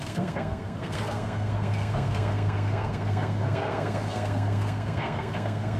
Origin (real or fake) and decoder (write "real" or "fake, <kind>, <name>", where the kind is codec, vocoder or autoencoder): fake, codec, SNAC